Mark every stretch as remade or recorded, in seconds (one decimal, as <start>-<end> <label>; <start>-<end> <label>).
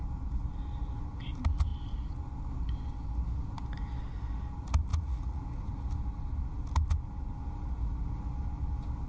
0.0-4.9 recorded; 4.9-5.4 remade; 5.4-9.1 recorded